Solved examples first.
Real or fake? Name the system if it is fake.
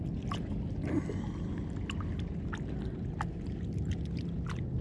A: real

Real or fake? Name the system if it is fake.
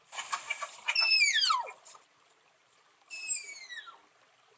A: real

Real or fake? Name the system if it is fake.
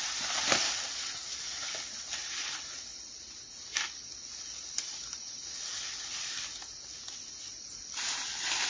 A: real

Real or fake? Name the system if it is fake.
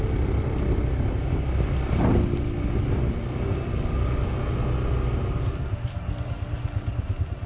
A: real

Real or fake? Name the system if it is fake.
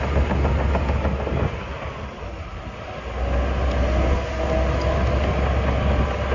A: real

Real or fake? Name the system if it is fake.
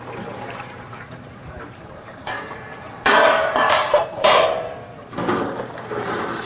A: fake, vocoder, BigVGAN v2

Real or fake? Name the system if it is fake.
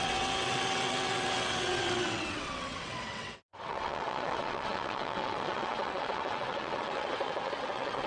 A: fake, vocoder, WaveNeXt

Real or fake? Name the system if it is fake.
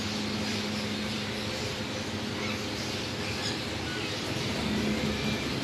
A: real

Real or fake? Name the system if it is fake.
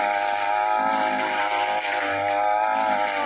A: real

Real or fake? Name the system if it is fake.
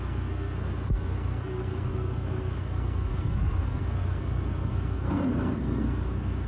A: fake, codec, SNAC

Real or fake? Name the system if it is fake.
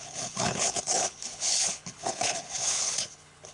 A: fake, codec, HILCodec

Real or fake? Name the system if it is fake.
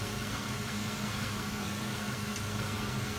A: fake, codec, SNAC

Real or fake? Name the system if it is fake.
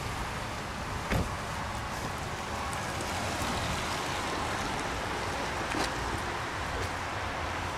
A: real